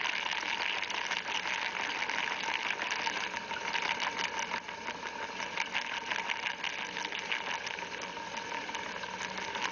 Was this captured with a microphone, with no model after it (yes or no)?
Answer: yes